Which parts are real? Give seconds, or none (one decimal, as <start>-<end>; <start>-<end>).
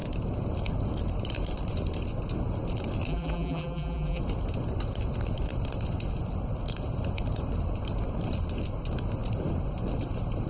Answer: 0.0-3.1; 4.2-10.5